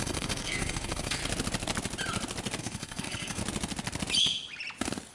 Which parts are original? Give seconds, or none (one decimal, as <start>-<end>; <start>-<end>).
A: 1.2-2.6; 3.4-5.1